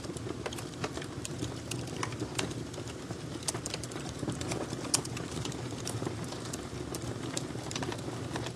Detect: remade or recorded remade